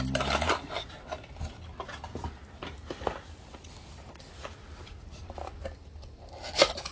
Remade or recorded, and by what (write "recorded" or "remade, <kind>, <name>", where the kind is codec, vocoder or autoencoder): recorded